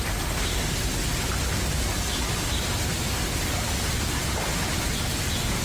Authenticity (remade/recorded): recorded